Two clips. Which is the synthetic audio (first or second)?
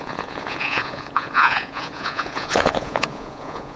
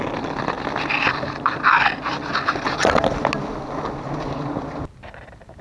first